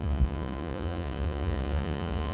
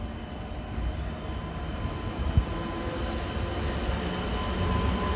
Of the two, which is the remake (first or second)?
first